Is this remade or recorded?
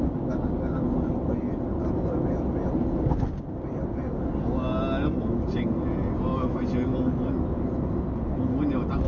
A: recorded